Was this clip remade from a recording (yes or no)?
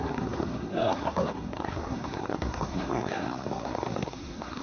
yes